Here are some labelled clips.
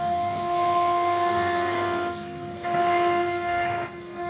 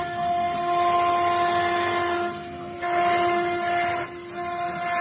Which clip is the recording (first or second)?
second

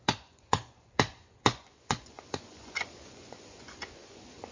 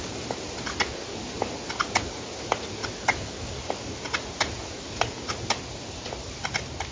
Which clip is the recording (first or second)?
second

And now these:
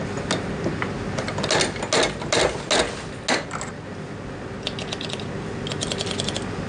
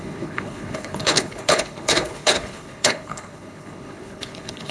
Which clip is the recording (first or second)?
first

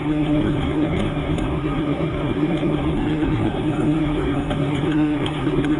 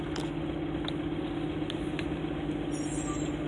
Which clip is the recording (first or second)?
second